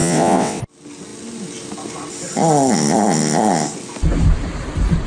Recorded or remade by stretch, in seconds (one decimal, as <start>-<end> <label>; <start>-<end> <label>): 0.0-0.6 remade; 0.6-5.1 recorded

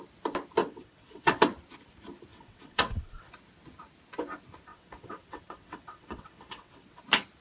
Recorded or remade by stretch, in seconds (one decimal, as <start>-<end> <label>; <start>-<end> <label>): 0.0-0.6 recorded; 0.6-1.4 remade; 1.4-2.3 recorded; 2.3-3.3 remade; 3.3-4.7 recorded; 4.7-7.0 remade; 7.0-7.4 recorded

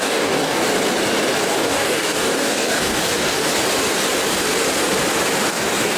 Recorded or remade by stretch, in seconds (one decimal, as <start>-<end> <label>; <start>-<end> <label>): 0.0-0.6 remade; 0.6-1.4 recorded; 1.4-3.5 remade; 3.5-5.5 recorded; 5.5-6.0 remade

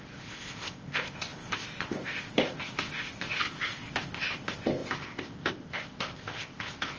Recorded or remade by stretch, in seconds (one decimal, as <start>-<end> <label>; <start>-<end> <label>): 0.0-7.0 remade